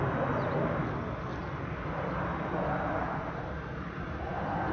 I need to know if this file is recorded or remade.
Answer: recorded